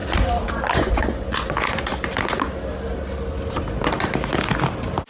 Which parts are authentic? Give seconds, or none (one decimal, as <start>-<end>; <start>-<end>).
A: 0.0-0.5; 1.9-5.1

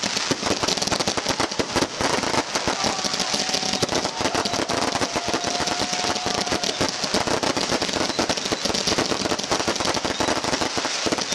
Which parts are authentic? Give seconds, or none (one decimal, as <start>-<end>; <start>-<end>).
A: 0.0-11.3

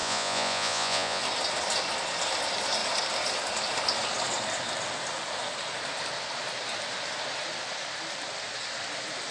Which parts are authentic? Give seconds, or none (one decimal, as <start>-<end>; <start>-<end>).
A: 1.2-9.3

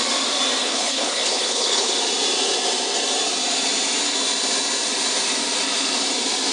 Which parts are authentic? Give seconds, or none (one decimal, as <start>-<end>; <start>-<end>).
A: 0.0-0.6; 1.9-6.5

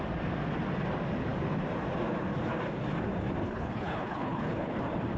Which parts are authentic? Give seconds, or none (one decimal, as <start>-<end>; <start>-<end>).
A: 0.0-3.4; 4.8-5.2

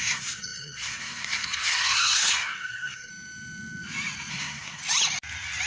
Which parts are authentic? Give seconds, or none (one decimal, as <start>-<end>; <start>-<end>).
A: 3.1-4.3; 4.8-5.7

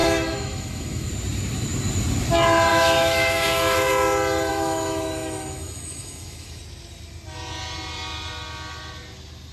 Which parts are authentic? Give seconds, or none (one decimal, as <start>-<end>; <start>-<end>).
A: 1.1-2.7; 3.9-4.5; 6.6-9.5

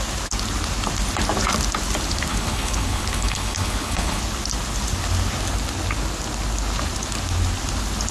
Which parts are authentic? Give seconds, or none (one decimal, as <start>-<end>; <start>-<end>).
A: 0.0-2.3; 4.2-8.1